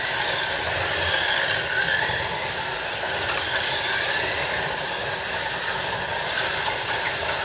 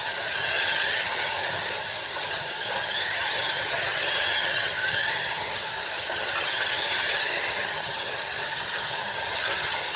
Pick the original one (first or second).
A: first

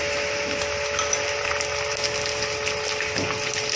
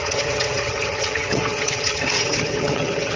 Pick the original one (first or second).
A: first